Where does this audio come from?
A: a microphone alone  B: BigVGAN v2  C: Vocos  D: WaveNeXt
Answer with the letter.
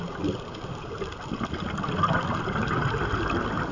A